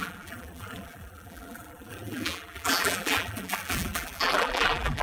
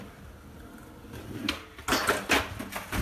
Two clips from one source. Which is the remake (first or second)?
first